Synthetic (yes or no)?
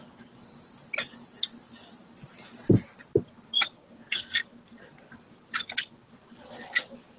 no